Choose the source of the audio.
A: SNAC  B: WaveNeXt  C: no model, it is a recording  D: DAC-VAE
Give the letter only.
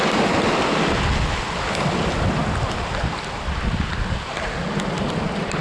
C